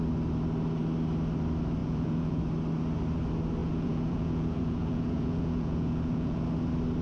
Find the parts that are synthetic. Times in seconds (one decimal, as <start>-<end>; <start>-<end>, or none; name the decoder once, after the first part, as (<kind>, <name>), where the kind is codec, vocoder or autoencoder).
1.8-2.4 (vocoder, Vocos); 3.6-6.4